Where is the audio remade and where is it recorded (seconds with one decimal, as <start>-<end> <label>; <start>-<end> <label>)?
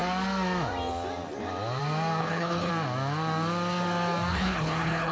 0.0-2.2 recorded; 2.2-2.7 remade; 2.7-4.3 recorded; 4.3-5.1 remade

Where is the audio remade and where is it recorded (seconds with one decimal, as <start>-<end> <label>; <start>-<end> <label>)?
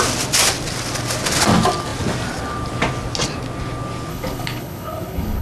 0.0-4.1 recorded; 4.1-5.4 remade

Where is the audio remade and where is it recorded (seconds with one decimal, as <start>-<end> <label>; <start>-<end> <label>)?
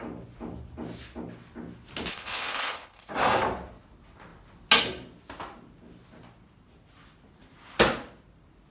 0.0-2.1 recorded; 2.1-3.1 remade; 3.1-8.7 recorded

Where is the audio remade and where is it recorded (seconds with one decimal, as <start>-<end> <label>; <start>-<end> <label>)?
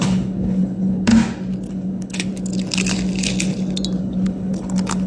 0.0-1.1 remade; 1.1-1.7 recorded; 1.7-2.3 remade; 2.3-4.0 recorded; 4.0-5.1 remade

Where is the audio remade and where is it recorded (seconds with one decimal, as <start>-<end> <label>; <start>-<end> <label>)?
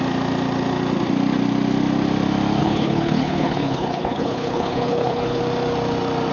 0.0-2.6 recorded; 2.6-5.4 remade; 5.4-6.3 recorded